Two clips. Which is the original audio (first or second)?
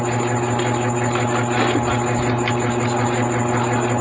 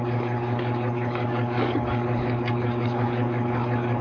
first